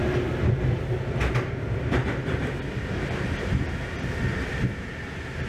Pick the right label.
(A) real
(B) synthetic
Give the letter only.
A